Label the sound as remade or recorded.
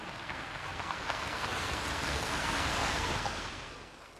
remade